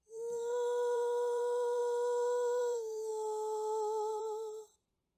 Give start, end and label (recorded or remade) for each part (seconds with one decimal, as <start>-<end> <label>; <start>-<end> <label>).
0.0-3.1 remade; 3.1-4.1 recorded; 4.1-5.2 remade